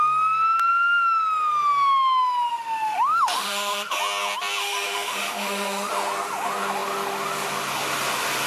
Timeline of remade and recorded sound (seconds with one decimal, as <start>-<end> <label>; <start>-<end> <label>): 0.0-2.5 recorded; 2.5-4.0 remade; 4.0-4.6 recorded; 4.6-5.9 remade; 5.9-8.5 recorded